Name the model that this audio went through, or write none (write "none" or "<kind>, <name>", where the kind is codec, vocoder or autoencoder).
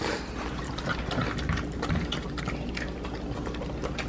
none